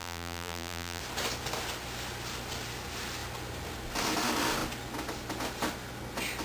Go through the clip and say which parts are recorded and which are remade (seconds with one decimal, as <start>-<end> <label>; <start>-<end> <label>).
0.0-1.0 remade; 1.0-6.4 recorded